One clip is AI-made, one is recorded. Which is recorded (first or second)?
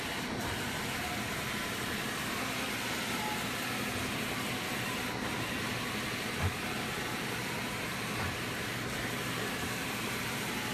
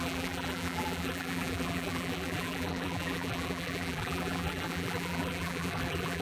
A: first